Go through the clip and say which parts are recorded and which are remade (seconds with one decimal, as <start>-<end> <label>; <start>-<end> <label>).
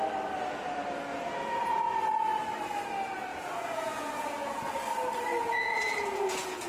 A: 0.0-1.1 recorded; 1.1-1.8 remade; 1.8-3.3 recorded; 3.3-4.8 remade; 4.8-5.3 recorded; 5.3-6.7 remade